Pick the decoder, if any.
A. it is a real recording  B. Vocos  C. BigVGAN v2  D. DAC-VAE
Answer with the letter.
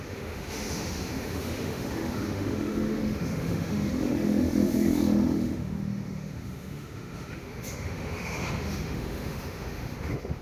D